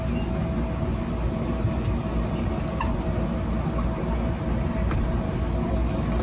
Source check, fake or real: real